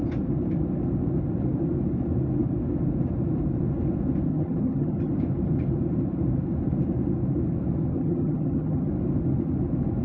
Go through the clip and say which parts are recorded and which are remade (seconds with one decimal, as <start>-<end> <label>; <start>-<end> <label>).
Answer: 0.0-4.3 recorded; 4.3-5.1 remade; 5.1-7.9 recorded; 7.9-8.9 remade; 8.9-10.0 recorded